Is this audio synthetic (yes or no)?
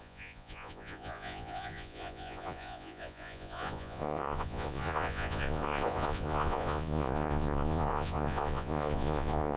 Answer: yes